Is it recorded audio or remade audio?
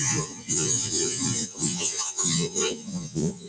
remade